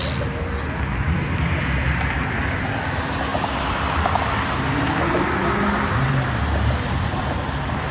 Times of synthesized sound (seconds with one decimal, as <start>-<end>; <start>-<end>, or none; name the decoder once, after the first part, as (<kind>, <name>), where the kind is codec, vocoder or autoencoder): none